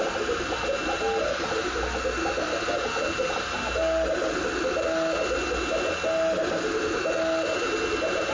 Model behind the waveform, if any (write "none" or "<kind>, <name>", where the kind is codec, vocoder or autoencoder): none